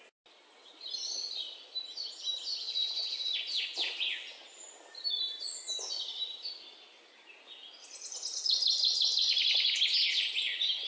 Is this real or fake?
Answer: real